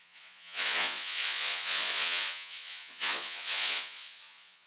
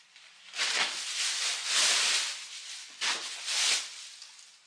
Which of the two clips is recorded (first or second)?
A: second